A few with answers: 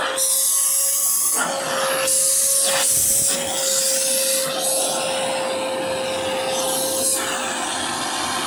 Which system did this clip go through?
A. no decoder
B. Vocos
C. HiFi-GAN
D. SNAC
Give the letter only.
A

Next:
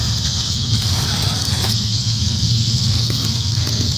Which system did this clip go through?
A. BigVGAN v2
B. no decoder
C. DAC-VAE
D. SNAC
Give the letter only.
D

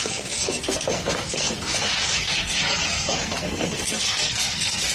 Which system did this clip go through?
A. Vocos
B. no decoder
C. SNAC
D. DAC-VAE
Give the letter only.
C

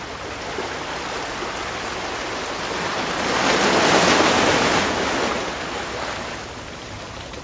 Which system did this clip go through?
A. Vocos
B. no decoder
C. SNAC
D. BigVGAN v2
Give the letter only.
B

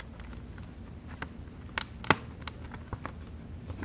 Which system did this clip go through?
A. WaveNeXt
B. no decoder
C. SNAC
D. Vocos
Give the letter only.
B